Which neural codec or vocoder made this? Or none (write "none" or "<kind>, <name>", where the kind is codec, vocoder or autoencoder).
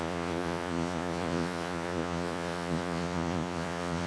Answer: vocoder, Vocos